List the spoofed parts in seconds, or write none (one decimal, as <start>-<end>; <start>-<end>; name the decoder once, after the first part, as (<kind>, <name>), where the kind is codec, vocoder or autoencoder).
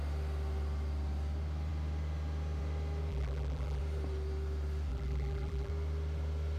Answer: 3.1-3.8 (vocoder, BigVGAN v2); 4.9-5.7